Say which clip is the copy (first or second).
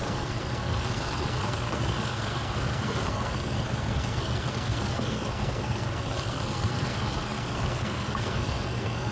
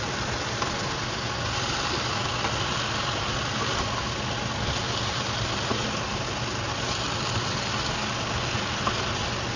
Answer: first